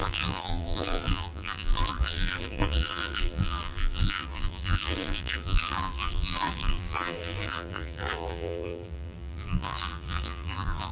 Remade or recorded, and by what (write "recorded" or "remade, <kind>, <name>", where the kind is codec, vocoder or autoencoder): remade, vocoder, BigVGAN v2